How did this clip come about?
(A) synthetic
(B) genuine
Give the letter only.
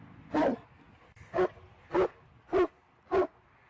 B